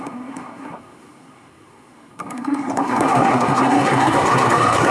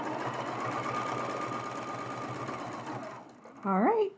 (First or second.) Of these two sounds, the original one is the second